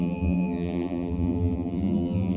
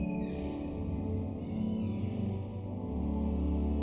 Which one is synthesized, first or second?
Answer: first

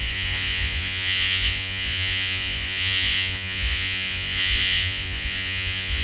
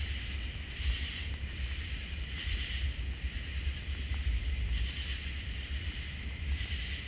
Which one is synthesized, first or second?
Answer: first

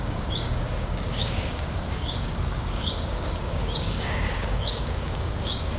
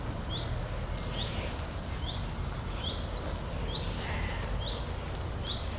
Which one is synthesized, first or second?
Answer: first